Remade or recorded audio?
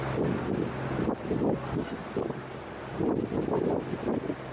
recorded